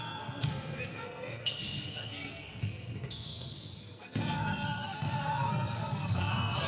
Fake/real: fake